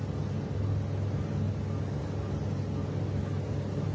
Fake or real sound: real